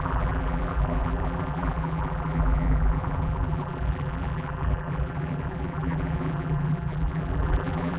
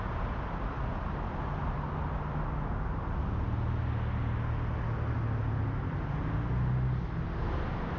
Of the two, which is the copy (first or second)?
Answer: first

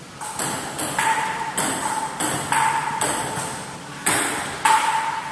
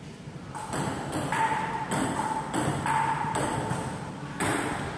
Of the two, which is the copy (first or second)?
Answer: second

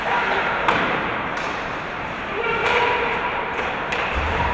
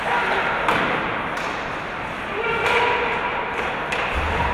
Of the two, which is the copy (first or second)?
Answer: first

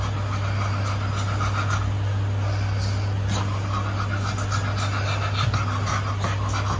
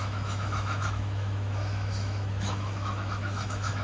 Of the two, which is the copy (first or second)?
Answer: second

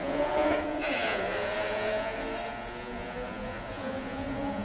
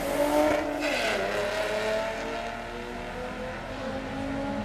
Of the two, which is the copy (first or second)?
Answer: first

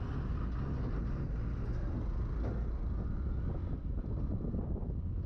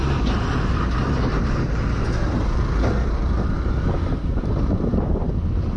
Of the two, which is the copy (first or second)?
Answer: second